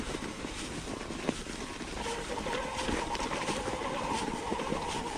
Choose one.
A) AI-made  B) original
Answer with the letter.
B